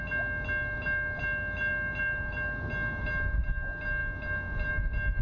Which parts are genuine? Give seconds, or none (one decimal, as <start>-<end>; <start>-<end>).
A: 0.0-5.2